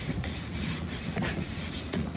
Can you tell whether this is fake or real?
fake